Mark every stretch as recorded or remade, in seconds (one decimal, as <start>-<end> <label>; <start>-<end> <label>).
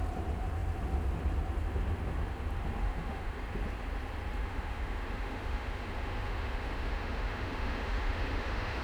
0.0-2.8 recorded; 2.8-3.4 remade; 3.4-4.4 recorded; 4.4-8.8 remade